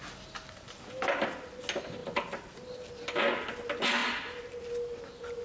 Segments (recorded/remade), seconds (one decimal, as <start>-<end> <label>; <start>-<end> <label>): 0.0-5.4 recorded